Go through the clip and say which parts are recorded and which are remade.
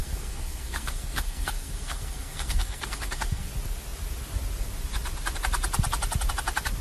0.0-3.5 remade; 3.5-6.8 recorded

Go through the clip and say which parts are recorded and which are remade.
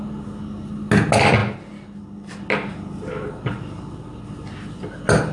0.0-5.3 recorded